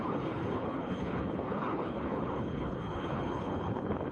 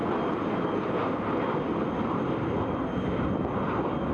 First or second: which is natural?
second